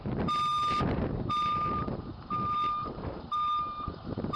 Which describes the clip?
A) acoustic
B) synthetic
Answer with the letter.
B